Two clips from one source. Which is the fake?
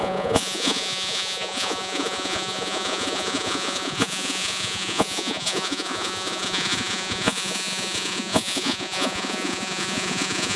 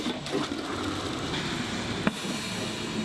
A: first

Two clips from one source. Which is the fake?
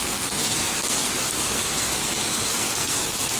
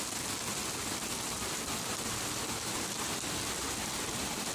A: first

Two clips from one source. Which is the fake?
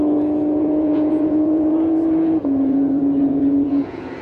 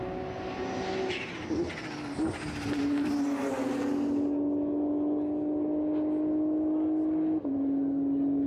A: first